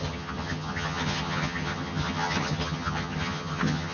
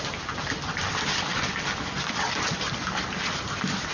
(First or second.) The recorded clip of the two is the second